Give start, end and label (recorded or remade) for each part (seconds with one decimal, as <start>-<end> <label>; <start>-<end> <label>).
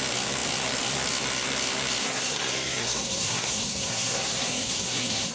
0.0-2.0 recorded; 2.0-5.3 remade